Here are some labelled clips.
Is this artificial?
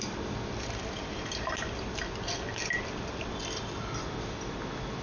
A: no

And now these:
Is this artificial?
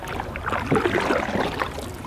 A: no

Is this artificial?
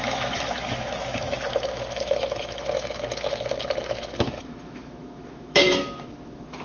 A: yes